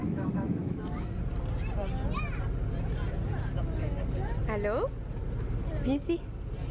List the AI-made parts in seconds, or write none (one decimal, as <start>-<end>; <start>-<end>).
0.0-1.1